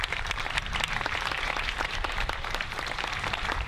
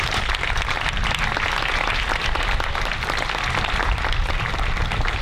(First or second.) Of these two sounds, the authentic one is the second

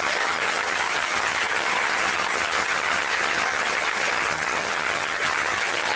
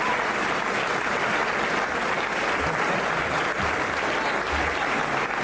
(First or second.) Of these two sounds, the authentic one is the second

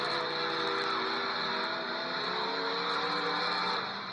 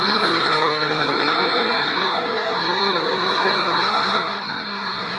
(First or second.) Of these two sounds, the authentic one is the first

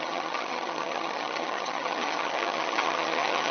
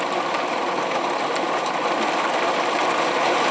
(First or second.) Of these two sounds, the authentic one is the second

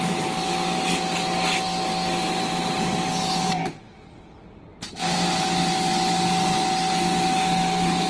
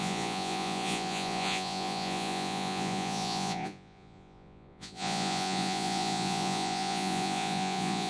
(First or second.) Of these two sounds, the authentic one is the first